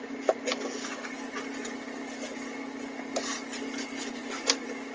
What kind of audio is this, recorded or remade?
recorded